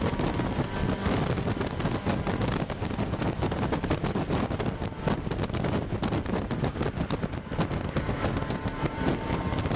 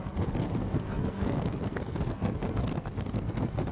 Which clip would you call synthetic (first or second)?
second